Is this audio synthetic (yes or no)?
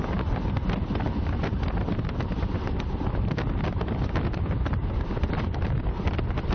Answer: no